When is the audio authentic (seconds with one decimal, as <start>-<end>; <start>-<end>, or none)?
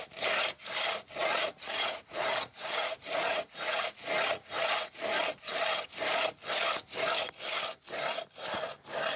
0.0-1.2; 5.0-9.2